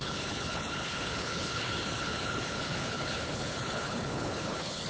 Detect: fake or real fake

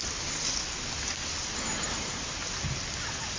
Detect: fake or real real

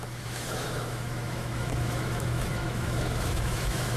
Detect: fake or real fake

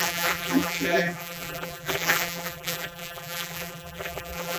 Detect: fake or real fake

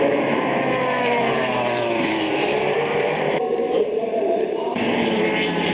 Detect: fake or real fake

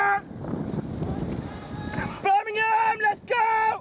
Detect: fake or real real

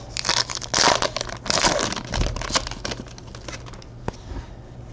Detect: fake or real real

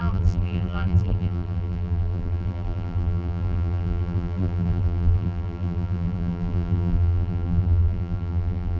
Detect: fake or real fake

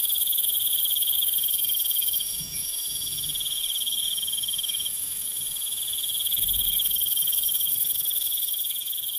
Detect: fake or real fake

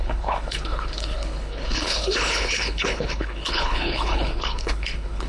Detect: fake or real fake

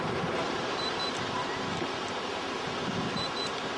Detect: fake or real fake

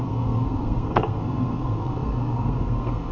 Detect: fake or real fake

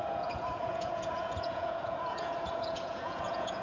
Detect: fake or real fake